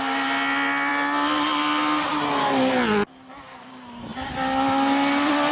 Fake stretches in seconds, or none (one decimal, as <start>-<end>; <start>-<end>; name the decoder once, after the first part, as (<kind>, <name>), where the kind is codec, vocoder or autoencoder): none